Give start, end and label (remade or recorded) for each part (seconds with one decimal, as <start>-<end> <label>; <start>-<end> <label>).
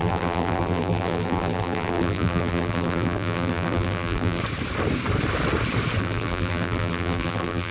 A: 0.0-4.4 remade; 4.4-6.0 recorded; 6.0-7.7 remade